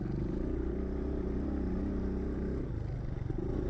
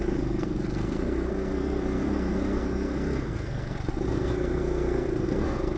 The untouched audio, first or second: first